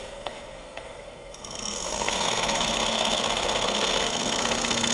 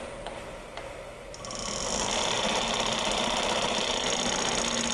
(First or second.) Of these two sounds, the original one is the second